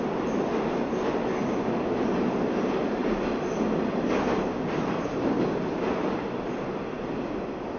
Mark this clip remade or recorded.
recorded